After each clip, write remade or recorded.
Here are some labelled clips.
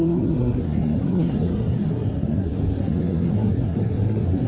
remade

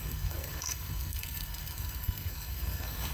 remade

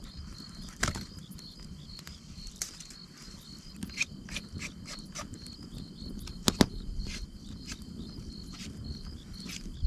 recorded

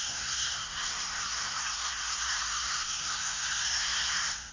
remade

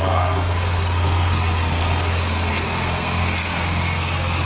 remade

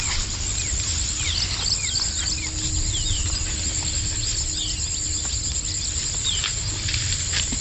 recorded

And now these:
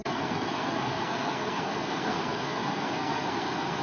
remade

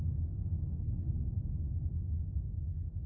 recorded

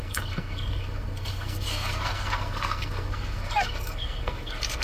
remade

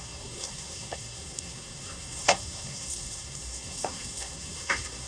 remade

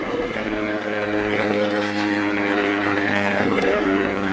remade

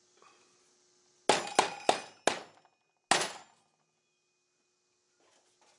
recorded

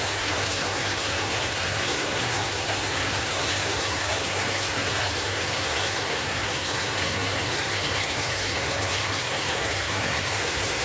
remade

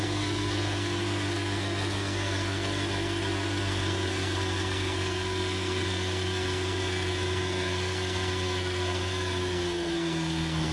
remade